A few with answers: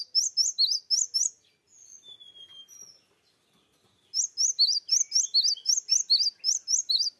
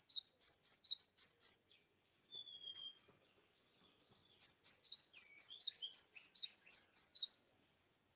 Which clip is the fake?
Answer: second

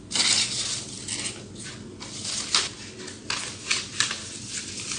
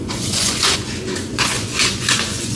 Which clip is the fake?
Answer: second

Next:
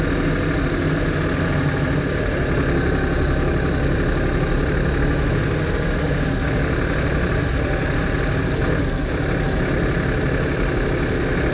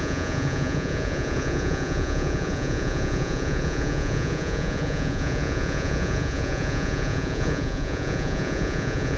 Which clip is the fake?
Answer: second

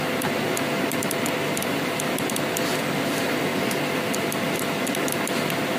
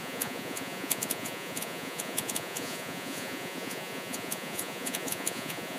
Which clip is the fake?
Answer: second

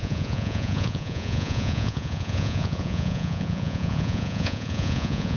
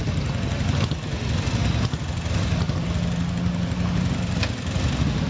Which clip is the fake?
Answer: first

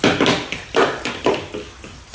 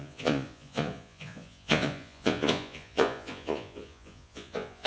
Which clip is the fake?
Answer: second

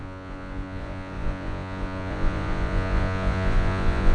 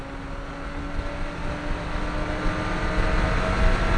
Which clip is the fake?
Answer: first